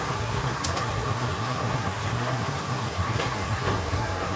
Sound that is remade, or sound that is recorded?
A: remade